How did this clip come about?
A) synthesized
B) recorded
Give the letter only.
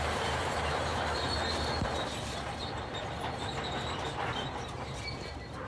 A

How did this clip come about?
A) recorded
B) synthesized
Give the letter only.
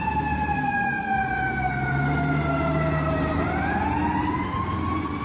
A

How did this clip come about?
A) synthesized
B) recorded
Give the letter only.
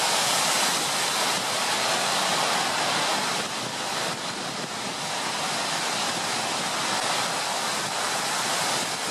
B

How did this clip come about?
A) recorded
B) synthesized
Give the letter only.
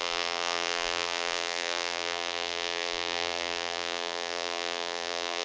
B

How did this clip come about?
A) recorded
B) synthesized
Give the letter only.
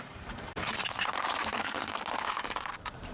B